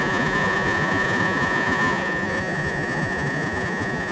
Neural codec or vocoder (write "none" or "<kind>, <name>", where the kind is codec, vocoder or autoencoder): vocoder, Vocos